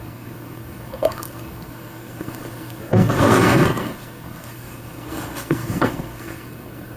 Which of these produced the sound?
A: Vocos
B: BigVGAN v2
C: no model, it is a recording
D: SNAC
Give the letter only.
D